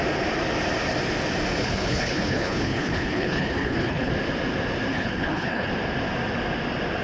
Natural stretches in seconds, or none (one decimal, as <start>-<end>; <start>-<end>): 0.0-1.6; 4.1-4.9; 5.7-7.0